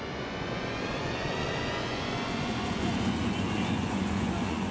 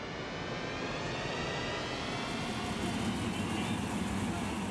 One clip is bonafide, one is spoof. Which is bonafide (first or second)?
second